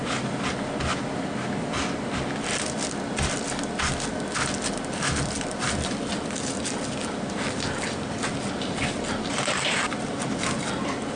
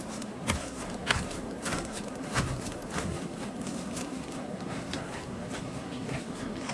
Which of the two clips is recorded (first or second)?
first